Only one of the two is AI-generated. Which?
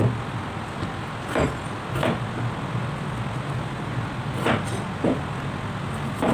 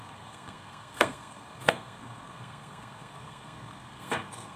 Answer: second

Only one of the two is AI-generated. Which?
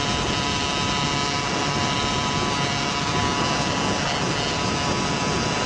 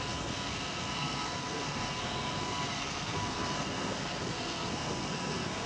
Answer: second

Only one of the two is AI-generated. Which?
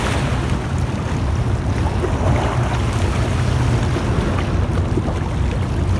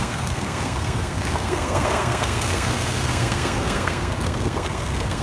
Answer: second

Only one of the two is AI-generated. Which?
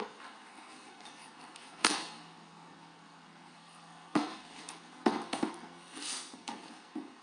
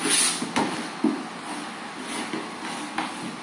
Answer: first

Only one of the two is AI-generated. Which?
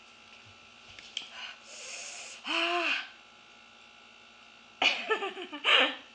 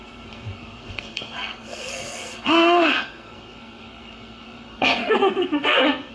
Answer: second